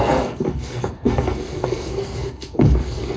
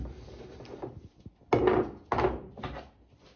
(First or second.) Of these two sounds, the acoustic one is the second